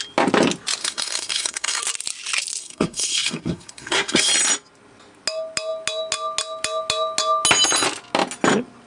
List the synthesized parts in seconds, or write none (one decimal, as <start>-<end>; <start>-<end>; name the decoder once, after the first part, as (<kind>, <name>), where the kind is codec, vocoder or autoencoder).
0.8-1.8 (codec, SNAC); 2.6-4.3